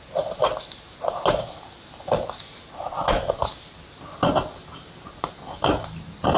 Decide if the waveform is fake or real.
real